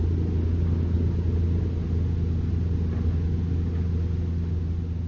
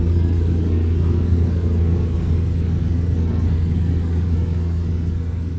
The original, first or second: first